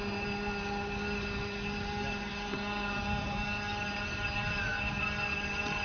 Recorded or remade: recorded